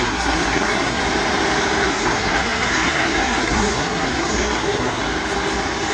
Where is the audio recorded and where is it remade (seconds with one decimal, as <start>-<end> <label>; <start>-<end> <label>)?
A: 0.0-1.0 remade; 1.0-1.9 recorded; 1.9-5.0 remade; 5.0-5.9 recorded